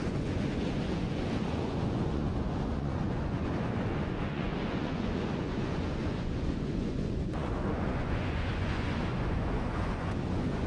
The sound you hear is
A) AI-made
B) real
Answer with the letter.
A